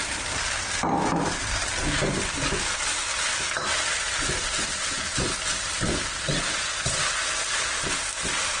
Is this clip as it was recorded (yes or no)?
yes